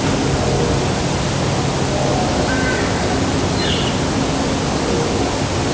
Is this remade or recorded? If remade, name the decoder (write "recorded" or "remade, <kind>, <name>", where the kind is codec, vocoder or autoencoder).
recorded